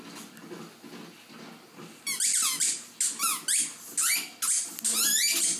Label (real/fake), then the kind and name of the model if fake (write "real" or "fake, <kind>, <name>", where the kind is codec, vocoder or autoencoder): real